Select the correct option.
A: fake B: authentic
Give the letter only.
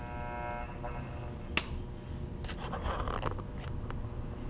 B